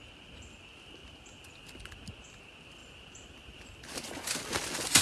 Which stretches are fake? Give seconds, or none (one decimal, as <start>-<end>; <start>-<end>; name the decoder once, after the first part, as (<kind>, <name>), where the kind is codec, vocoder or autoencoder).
2.8-3.9 (vocoder, BigVGAN v2)